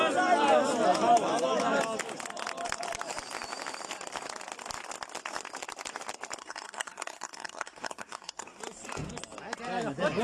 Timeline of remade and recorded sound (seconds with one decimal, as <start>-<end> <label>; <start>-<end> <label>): 0.0-6.4 recorded; 6.4-8.6 remade; 8.6-10.2 recorded